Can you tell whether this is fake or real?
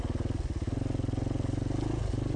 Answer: real